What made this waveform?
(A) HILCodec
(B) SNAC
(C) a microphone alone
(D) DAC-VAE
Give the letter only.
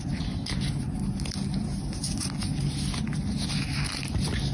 C